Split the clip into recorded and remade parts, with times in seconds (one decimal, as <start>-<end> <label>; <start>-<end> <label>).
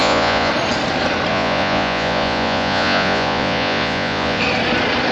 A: 0.0-0.5 remade; 0.5-1.3 recorded; 1.3-4.4 remade; 4.4-5.1 recorded